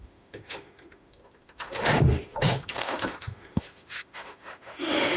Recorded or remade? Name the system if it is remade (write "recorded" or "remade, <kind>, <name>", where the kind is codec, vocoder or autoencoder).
remade, autoencoder, DAC-VAE